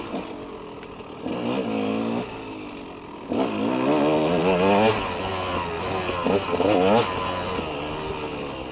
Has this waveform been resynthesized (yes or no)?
no